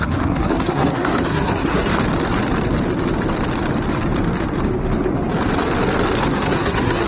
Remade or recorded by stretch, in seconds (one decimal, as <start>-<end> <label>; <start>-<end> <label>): 0.0-1.9 remade; 1.9-6.2 recorded; 6.2-7.1 remade

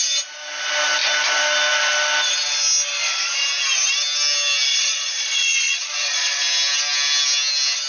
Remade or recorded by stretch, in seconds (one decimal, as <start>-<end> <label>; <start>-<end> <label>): 0.0-4.7 recorded; 4.7-6.4 remade; 6.4-7.9 recorded

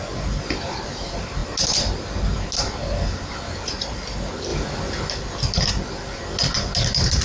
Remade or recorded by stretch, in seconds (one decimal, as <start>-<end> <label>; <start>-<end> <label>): 0.0-7.2 recorded

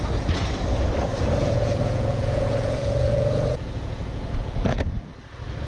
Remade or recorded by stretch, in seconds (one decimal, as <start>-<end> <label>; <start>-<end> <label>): 0.0-1.4 recorded; 1.4-4.8 remade; 4.8-5.7 recorded